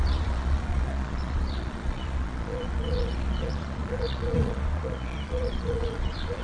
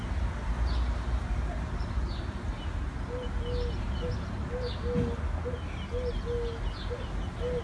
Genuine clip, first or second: second